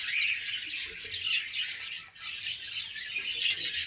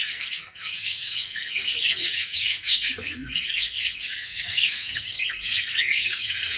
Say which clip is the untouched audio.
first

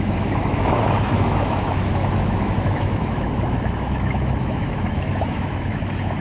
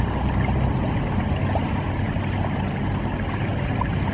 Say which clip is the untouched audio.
second